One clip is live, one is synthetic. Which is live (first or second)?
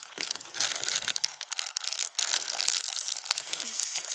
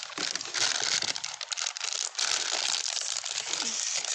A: second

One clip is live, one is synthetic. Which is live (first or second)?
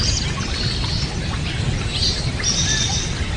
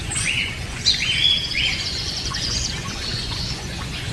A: first